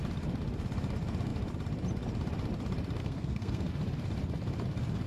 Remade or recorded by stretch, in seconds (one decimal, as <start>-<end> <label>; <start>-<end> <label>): 0.0-3.0 recorded; 3.0-3.7 remade; 3.7-5.1 recorded